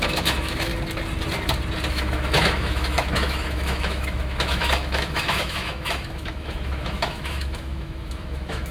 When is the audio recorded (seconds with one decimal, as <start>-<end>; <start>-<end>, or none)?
0.7-1.9